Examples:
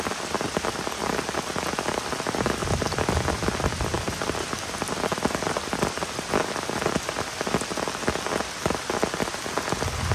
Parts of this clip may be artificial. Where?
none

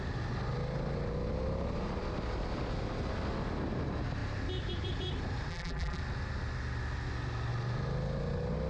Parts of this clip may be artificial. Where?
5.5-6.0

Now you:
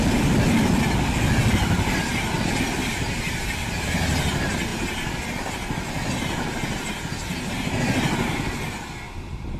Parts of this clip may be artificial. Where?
none